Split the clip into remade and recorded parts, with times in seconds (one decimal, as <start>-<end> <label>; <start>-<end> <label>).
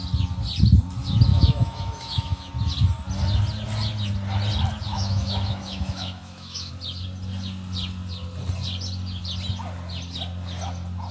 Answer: 0.0-1.3 recorded; 1.3-2.5 remade; 2.5-4.9 recorded; 4.9-6.7 remade; 6.7-11.1 recorded